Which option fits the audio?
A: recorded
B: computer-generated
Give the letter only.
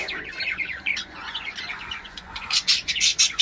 B